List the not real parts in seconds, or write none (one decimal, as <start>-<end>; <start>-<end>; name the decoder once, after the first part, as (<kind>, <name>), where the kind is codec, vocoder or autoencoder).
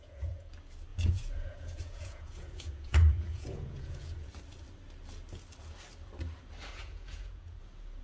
0.0-0.5 (vocoder, Vocos); 0.9-4.3; 6.7-7.6